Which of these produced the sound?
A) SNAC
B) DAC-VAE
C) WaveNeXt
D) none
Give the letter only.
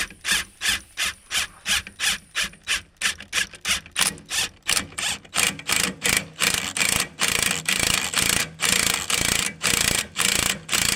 D